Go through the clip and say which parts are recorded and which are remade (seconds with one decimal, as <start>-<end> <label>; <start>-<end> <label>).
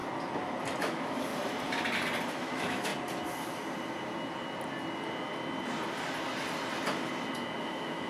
0.0-0.8 recorded; 0.8-1.3 remade; 1.3-2.3 recorded; 2.3-2.9 remade; 2.9-7.6 recorded; 7.6-8.1 remade